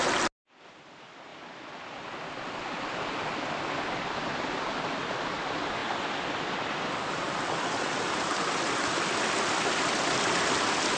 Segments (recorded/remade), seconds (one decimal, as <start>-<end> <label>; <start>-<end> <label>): 0.0-11.0 recorded